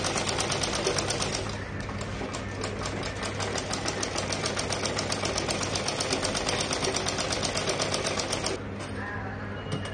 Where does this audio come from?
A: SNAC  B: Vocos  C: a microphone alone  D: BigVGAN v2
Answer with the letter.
C